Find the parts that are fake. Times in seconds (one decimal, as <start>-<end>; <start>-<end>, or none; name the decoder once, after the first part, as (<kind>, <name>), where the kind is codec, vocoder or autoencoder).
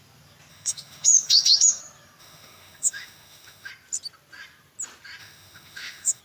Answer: 0.5-1.8 (autoencoder, DAC-VAE); 2.2-3.7; 5.2-6.2